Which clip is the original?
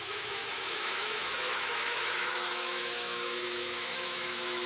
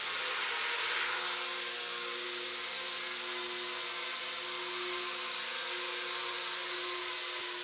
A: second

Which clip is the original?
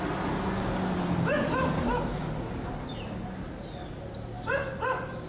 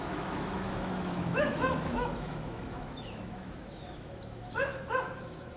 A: first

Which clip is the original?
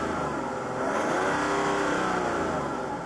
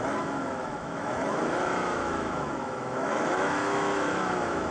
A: first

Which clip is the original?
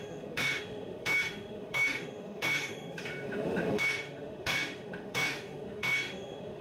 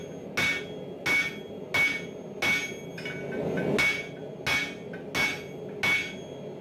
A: second